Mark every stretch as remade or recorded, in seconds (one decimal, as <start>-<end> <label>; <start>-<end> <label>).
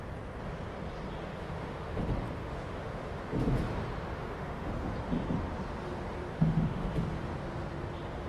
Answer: 0.0-1.4 recorded; 1.4-2.0 remade; 2.0-2.4 recorded; 2.4-3.2 remade; 3.2-4.1 recorded; 4.1-4.9 remade; 4.9-6.3 recorded; 6.3-6.9 remade; 6.9-8.3 recorded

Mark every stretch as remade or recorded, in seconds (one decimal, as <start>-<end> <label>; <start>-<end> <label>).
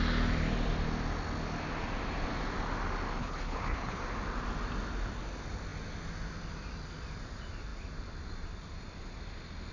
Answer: 0.0-3.2 recorded; 3.2-4.0 remade; 4.0-9.7 recorded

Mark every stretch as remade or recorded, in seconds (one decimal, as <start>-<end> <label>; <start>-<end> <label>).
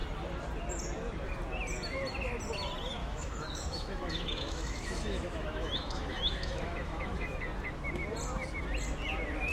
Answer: 0.0-3.0 recorded; 3.0-7.4 remade; 7.4-9.5 recorded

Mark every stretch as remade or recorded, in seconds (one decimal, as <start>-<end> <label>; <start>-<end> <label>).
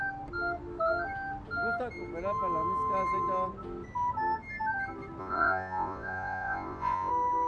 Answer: 0.0-5.2 recorded; 5.2-7.1 remade; 7.1-7.5 recorded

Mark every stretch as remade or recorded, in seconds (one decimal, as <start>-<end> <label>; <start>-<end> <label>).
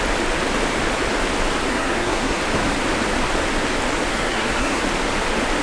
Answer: 0.0-1.7 recorded; 1.7-2.4 remade; 2.4-4.1 recorded; 4.1-4.8 remade; 4.8-5.6 recorded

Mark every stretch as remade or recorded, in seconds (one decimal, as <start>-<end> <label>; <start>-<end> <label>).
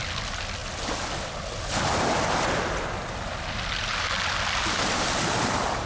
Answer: 0.0-5.9 recorded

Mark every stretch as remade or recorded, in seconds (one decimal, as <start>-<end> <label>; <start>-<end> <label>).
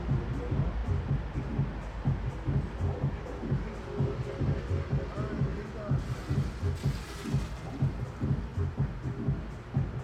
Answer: 0.0-10.0 recorded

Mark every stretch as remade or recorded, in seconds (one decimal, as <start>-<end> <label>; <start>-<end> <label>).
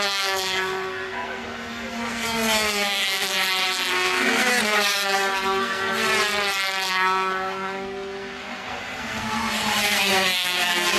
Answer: 0.0-3.3 remade; 3.3-3.9 recorded; 3.9-6.1 remade; 6.1-6.9 recorded; 6.9-11.0 remade